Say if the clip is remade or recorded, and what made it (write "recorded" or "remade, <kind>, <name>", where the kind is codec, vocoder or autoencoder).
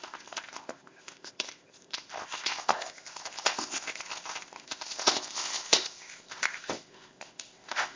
remade, codec, ZipCodec